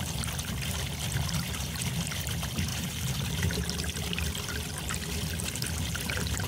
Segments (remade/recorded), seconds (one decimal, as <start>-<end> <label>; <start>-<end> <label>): 0.0-2.7 recorded; 2.7-3.5 remade; 3.5-6.5 recorded